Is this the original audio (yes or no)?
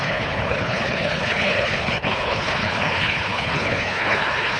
no